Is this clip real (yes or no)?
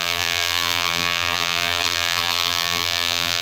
no